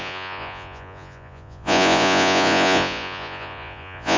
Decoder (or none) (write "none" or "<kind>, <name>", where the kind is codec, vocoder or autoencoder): vocoder, Vocos